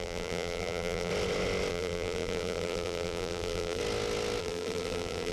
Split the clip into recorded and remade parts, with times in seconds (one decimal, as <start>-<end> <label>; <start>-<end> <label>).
0.0-1.1 remade; 1.1-1.7 recorded; 1.7-3.8 remade; 3.8-4.4 recorded; 4.4-5.3 remade